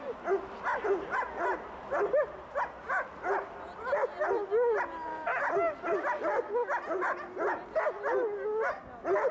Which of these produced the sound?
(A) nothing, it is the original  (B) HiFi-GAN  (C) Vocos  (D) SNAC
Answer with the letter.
A